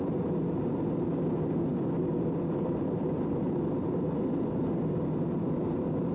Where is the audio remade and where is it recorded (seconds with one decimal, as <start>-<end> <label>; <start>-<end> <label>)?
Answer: 0.0-6.1 recorded